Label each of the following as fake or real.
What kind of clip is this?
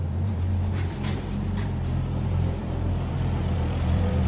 fake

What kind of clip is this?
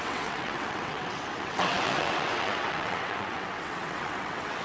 fake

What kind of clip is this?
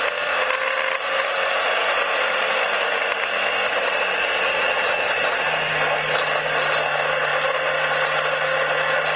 real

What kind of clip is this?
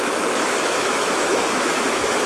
fake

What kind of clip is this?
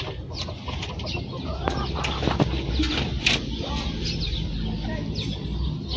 real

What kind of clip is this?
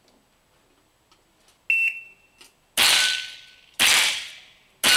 real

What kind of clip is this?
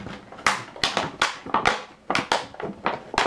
real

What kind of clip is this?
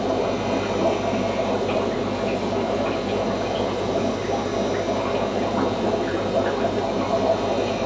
real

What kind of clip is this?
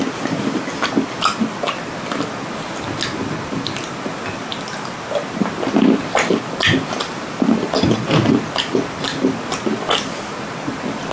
real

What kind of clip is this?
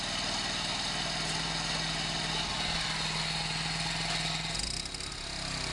real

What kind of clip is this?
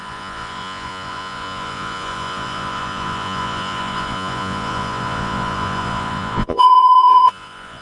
fake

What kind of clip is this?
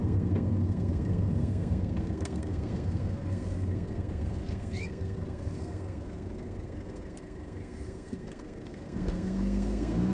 fake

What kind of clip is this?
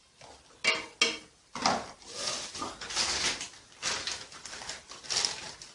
real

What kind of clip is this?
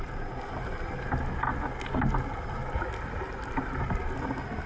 real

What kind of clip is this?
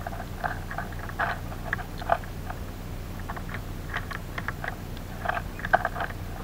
real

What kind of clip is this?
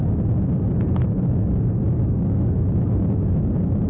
real